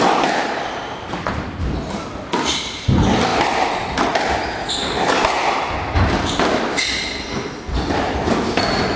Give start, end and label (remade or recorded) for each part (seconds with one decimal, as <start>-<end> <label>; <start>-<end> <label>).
0.0-9.0 recorded